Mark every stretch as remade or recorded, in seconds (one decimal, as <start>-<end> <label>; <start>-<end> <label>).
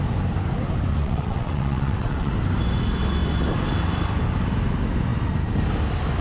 0.0-0.9 recorded; 0.9-2.3 remade; 2.3-6.2 recorded